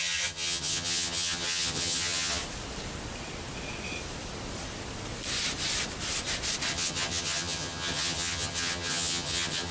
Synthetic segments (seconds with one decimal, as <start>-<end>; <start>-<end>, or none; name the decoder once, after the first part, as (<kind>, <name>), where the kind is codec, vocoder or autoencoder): 0.0-2.4 (vocoder, HiFi-GAN); 6.7-9.7